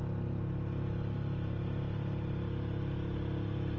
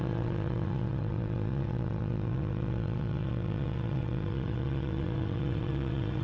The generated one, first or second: second